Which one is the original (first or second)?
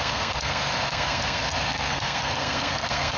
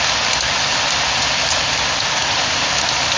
second